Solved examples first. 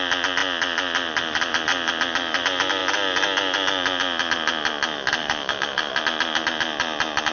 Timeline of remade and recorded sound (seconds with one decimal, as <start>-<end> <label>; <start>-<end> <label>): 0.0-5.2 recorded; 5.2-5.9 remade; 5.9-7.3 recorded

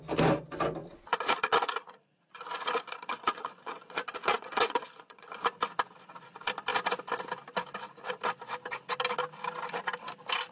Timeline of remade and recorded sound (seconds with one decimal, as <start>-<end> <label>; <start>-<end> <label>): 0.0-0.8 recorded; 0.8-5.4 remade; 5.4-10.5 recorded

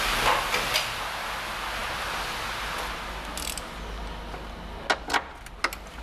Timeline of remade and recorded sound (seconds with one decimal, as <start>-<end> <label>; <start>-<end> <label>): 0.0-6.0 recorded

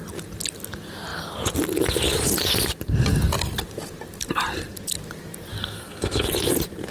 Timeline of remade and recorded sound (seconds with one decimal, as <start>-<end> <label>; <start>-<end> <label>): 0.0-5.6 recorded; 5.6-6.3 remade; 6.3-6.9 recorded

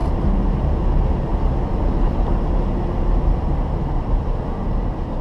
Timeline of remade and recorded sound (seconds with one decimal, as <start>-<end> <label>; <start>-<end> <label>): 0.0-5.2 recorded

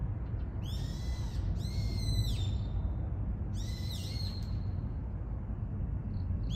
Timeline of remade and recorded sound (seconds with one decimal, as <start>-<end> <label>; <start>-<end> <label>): 0.0-6.6 recorded

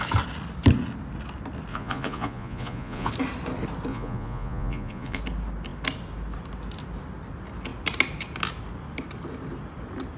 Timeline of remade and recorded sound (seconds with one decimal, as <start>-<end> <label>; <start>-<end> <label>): 0.0-1.7 recorded; 1.7-3.1 remade; 3.1-3.9 recorded; 3.9-5.2 remade; 5.2-10.2 recorded

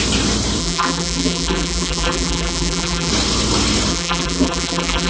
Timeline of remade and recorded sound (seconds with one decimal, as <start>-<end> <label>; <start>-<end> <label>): 0.0-0.6 recorded; 0.6-3.1 remade; 3.1-3.9 recorded; 3.9-5.1 remade